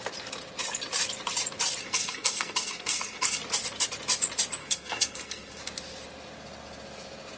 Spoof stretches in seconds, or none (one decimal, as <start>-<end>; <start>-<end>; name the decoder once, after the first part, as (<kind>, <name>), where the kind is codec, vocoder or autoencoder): 1.8-3.4 (codec, SNAC); 4.6-5.6

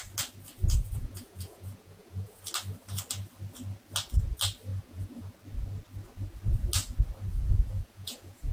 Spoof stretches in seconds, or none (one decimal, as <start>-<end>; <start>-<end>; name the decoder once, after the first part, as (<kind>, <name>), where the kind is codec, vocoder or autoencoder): 0.6-2.4 (vocoder, Vocos); 4.7-5.3; 7.3-8.5

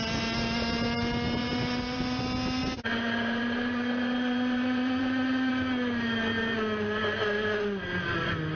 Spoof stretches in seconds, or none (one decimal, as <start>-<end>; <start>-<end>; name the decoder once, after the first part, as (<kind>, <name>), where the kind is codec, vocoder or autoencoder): 1.4-2.2 (vocoder, BigVGAN v2); 2.6-5.5

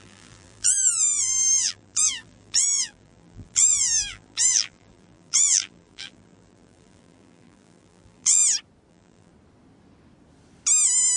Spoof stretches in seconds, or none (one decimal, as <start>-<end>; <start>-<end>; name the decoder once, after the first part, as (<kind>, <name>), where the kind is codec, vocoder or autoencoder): 0.0-8.4 (vocoder, BigVGAN v2); 8.9-9.3